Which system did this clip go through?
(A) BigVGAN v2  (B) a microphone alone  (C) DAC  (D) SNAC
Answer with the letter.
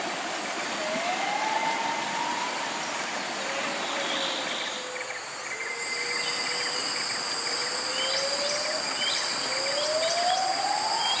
B